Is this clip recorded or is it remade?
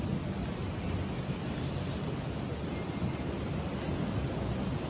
recorded